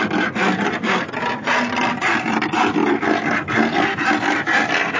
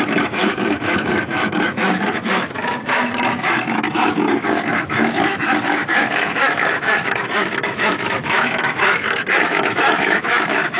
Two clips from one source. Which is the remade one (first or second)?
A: second